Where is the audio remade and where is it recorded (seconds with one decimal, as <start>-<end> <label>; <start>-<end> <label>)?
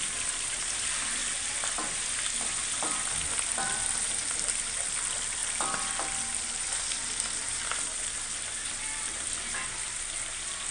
0.0-1.2 remade; 1.2-3.2 recorded; 3.2-5.4 remade; 5.4-6.3 recorded; 6.3-10.7 remade